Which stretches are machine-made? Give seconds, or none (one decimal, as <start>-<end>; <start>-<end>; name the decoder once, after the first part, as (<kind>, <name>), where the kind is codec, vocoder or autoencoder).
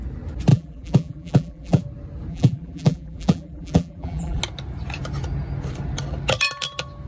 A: 0.5-1.8 (vocoder, BigVGAN v2); 2.3-4.4